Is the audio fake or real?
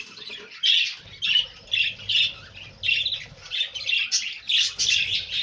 real